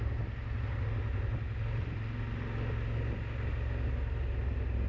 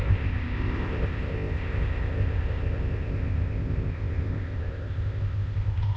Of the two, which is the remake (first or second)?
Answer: second